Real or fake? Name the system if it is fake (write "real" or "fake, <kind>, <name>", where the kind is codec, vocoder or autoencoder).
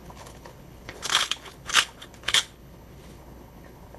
fake, codec, HILCodec